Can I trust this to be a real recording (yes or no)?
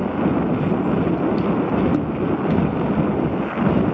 yes